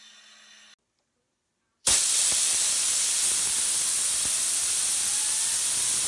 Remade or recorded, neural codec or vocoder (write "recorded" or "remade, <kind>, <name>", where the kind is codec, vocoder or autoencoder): recorded